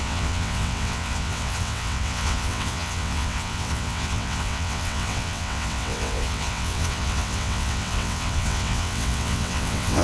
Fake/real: fake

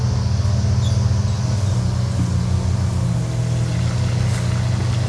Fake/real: real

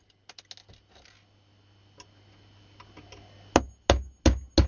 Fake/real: real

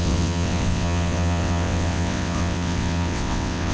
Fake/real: fake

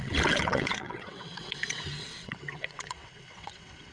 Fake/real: fake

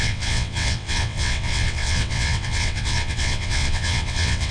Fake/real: fake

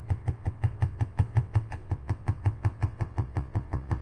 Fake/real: fake